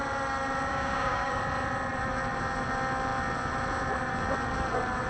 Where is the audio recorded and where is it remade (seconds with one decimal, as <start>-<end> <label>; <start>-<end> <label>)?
0.0-0.7 recorded; 0.7-1.4 remade; 1.4-5.1 recorded